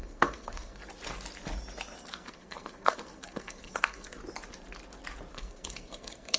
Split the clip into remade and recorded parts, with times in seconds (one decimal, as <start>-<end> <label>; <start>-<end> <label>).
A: 0.0-0.8 remade; 0.8-2.1 recorded; 2.1-4.2 remade; 4.2-5.3 recorded; 5.3-6.4 remade